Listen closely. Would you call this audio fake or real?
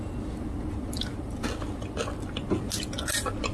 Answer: real